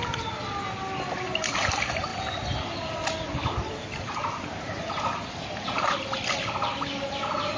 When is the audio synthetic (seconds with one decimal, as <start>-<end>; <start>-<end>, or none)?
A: none